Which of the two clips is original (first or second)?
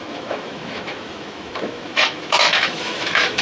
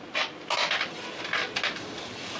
second